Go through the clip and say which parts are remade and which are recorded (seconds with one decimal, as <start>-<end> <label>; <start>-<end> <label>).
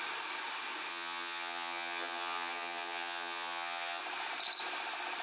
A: 0.0-0.9 recorded; 0.9-4.0 remade; 4.0-5.2 recorded